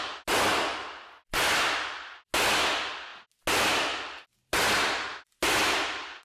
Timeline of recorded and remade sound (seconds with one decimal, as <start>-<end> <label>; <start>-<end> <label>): 0.0-6.2 recorded